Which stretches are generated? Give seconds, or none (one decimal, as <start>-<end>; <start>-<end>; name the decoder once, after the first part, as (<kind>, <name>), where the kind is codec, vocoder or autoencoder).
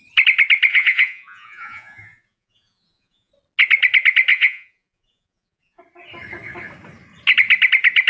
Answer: 0.7-3.3 (vocoder, Vocos); 4.3-5.8